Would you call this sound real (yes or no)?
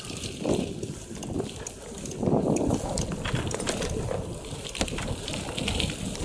yes